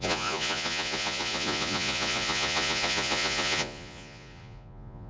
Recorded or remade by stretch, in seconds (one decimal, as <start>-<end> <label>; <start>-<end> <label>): 0.0-5.1 remade